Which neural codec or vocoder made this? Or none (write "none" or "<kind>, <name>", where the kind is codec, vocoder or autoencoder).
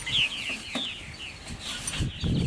none